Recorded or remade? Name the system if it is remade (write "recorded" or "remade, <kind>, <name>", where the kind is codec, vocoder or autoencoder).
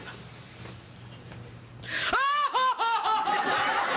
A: recorded